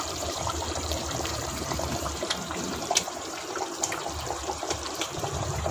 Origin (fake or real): fake